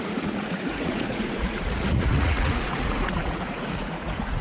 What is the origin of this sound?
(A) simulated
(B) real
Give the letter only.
A